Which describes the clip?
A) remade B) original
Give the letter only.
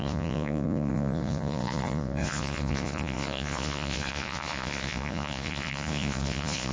A